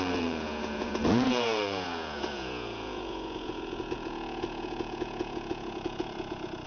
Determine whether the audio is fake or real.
fake